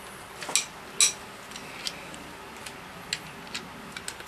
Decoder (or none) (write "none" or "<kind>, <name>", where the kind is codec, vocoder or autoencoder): none